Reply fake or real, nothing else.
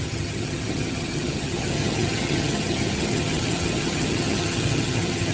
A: fake